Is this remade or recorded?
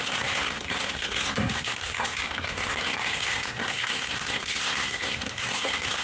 remade